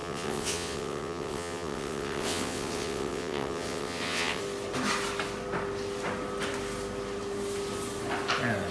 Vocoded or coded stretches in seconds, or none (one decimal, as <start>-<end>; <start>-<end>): 0.0-4.4